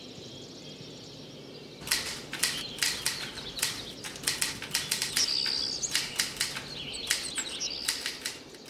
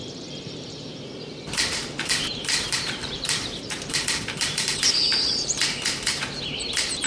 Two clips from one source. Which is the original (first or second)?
first